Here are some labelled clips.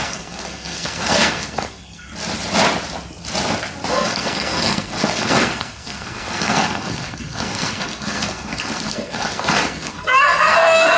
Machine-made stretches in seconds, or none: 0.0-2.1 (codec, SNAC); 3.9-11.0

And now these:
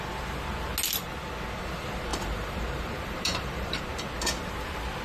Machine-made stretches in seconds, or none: 2.1-3.8 (vocoder, BigVGAN v2)